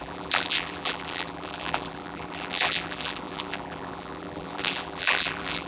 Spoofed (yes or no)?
yes